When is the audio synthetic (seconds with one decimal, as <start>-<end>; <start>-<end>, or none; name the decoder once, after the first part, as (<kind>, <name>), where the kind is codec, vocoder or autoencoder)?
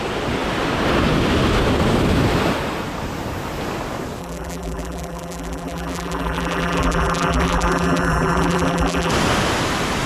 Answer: 4.2-9.1 (vocoder, BigVGAN v2)